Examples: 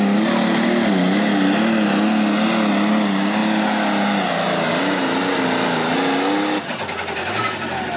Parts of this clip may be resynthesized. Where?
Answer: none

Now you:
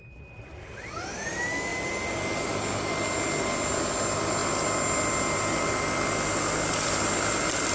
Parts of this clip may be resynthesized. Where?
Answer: none

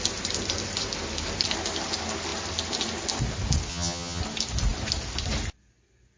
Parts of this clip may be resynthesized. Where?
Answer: 3.7-4.2 (vocoder, HiFi-GAN)

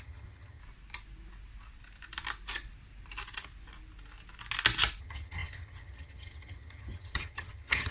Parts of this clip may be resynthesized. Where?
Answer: 0.0-0.6 (vocoder, HiFi-GAN); 5.0-7.9

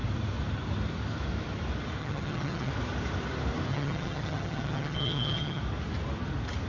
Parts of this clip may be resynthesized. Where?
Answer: 2.0-2.7 (vocoder, HiFi-GAN); 3.7-5.6

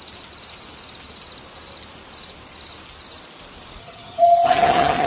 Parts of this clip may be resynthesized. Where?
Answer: 3.8-5.1 (vocoder, HiFi-GAN)